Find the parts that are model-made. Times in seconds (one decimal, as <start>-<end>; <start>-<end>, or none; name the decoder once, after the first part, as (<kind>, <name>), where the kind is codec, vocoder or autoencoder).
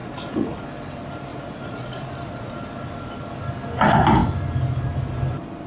0.0-0.6 (vocoder, Vocos); 1.3-2.1